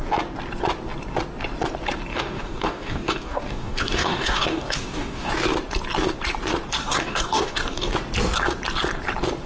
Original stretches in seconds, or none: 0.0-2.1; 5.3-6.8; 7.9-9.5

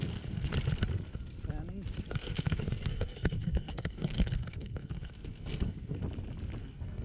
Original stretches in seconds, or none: 0.5-2.1; 6.0-6.6

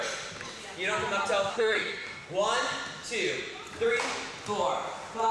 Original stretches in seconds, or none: 0.0-1.5; 2.3-5.3